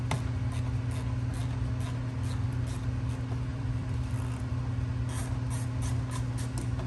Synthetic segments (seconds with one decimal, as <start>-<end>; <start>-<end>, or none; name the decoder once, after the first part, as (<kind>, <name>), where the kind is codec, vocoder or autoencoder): 3.5-4.6 (vocoder, BigVGAN v2)

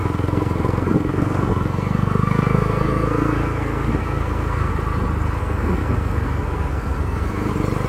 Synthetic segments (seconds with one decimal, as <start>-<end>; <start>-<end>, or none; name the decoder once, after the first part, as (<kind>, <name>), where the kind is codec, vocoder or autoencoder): 0.0-4.7 (codec, SNAC); 5.4-7.5

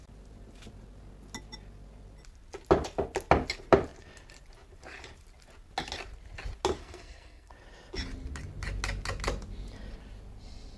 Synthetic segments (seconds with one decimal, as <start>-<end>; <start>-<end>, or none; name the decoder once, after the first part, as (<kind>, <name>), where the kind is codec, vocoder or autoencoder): 6.8-7.5 (codec, SNAC)

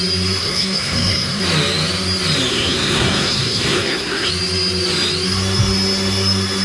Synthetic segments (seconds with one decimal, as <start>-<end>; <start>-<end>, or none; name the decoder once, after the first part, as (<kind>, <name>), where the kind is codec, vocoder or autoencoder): 0.4-1.4 (codec, SNAC); 2.5-4.3

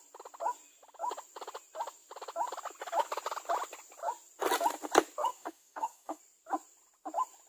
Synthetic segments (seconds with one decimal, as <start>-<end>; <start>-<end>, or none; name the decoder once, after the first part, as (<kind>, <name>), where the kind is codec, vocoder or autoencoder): 5.3-6.2 (codec, DAC)

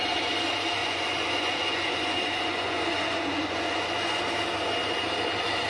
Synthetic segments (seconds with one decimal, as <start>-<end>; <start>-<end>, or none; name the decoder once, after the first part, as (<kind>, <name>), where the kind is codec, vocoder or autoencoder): 0.8-4.2 (vocoder, Vocos)

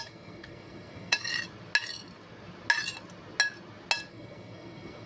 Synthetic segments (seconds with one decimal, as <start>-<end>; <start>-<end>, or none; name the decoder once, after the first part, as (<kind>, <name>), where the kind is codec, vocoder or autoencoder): 0.0-1.3 (codec, SNAC); 4.1-5.1

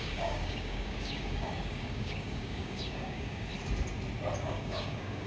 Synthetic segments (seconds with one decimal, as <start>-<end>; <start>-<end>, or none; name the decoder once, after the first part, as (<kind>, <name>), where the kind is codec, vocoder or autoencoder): 0.0-3.5 (codec, DAC); 4.4-5.3